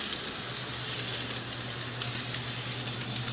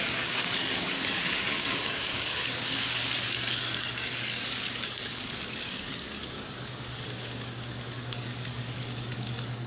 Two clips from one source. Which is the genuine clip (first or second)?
first